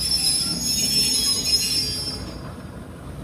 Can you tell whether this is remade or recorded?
recorded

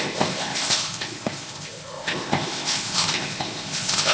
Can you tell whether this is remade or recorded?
remade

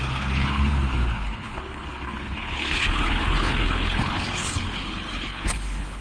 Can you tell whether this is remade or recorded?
remade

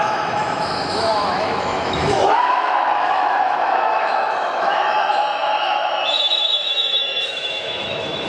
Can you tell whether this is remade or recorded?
remade